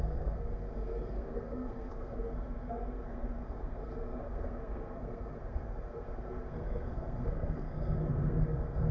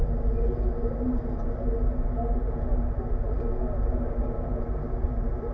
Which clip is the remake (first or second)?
first